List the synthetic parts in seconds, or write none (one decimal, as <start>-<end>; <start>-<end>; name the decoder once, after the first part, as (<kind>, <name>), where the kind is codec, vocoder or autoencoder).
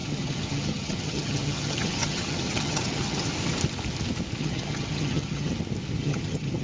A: 0.0-3.3 (vocoder, HiFi-GAN); 4.4-5.5; 6.0-6.6